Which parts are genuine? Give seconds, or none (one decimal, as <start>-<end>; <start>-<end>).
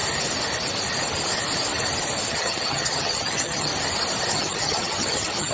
0.0-2.3; 3.7-4.3